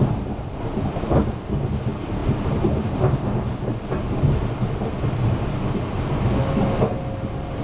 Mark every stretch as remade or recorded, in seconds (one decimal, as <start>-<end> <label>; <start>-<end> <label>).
0.0-7.6 recorded